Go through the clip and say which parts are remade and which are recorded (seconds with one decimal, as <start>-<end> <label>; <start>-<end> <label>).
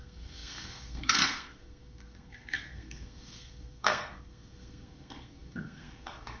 0.0-6.4 remade